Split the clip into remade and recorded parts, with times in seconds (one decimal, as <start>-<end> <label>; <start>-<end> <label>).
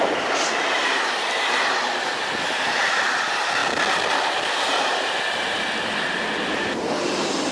0.0-7.5 recorded